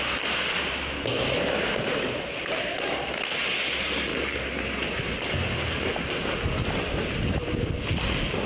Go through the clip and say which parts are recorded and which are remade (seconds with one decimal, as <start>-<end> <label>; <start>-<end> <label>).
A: 0.0-8.5 recorded

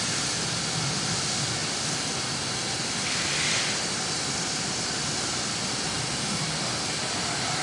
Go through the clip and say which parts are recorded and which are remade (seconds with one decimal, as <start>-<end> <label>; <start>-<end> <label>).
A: 0.0-7.6 recorded

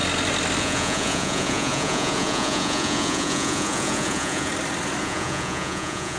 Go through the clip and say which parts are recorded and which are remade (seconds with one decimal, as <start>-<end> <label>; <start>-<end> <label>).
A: 0.0-0.6 recorded; 0.6-4.5 remade; 4.5-5.0 recorded; 5.0-6.2 remade

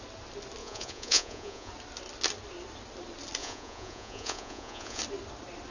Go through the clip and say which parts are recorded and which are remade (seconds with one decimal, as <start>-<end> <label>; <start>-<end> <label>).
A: 0.0-0.6 recorded; 0.6-1.7 remade; 1.7-3.4 recorded; 3.4-5.0 remade; 5.0-5.7 recorded

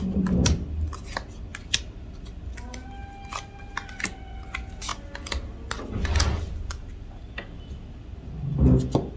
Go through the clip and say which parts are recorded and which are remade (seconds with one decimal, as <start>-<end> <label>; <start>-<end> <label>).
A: 0.0-9.2 recorded